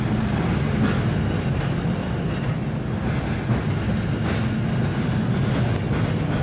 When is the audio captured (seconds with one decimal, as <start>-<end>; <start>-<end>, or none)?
0.0-2.0; 3.3-6.4